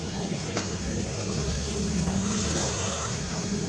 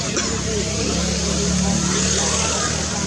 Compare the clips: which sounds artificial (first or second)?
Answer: first